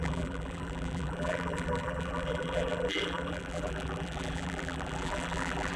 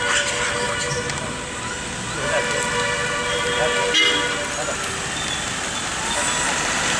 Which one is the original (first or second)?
second